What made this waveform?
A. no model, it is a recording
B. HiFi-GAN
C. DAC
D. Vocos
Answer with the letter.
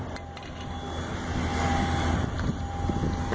A